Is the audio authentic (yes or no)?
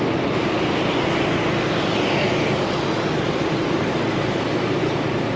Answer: yes